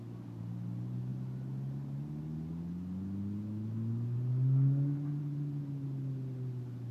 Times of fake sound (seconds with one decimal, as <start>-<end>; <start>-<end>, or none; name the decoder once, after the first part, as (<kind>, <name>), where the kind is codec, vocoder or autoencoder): none